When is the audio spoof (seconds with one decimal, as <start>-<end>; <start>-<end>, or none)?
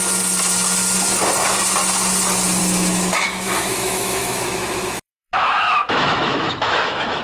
2.6-7.2